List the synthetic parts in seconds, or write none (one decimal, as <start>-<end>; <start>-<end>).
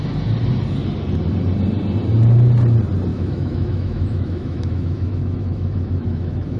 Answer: 3.1-6.6